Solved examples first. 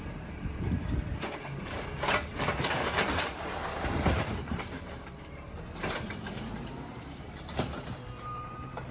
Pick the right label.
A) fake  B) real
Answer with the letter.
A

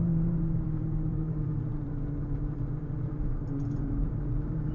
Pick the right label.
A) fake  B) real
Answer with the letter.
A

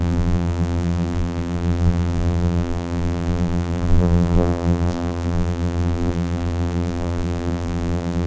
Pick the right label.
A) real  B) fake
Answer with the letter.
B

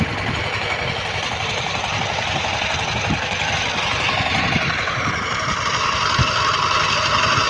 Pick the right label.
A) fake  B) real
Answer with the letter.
A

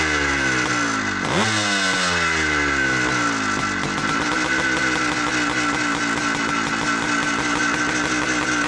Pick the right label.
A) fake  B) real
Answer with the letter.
B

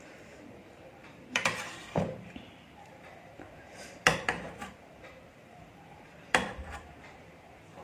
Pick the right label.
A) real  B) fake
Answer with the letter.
B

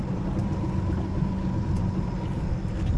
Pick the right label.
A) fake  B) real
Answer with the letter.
B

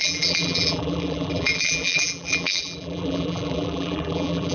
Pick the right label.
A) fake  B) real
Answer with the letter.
A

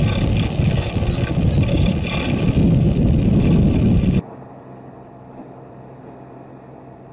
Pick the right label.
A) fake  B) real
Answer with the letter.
B